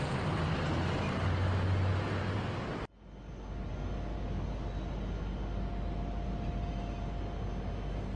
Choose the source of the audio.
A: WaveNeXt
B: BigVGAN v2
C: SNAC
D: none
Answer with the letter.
D